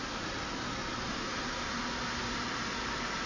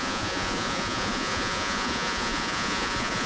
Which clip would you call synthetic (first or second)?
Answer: second